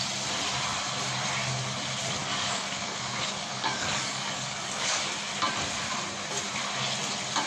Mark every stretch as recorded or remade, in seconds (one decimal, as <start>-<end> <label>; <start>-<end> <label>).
0.0-2.2 recorded; 2.2-5.1 remade; 5.1-7.5 recorded